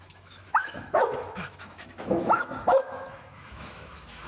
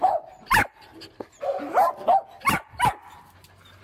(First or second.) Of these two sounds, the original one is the second